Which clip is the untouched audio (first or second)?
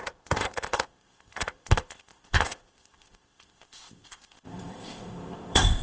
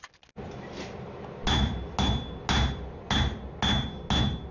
second